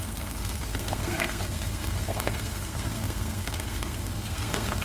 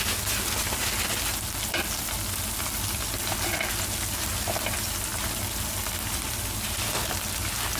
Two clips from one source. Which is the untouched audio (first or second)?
second